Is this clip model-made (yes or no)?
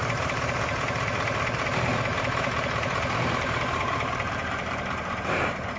yes